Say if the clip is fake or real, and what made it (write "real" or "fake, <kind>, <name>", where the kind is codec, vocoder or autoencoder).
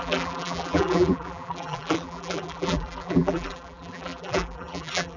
fake, vocoder, BigVGAN v2